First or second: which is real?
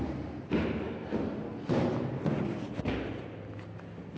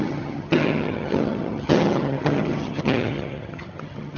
first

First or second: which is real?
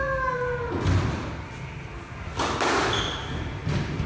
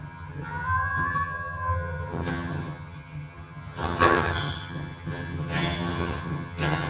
first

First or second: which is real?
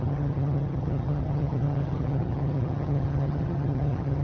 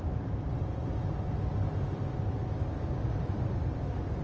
second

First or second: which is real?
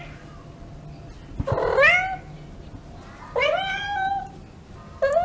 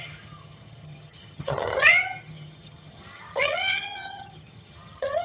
first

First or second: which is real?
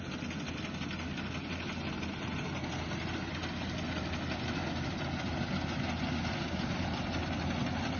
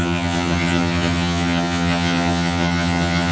first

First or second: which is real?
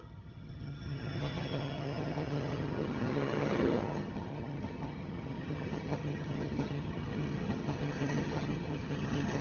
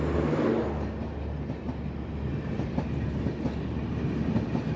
second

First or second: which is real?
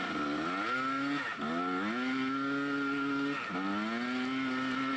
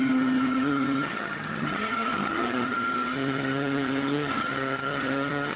first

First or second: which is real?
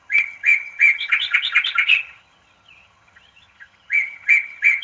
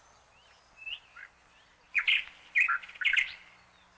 second